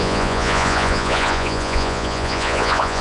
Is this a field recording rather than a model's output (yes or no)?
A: no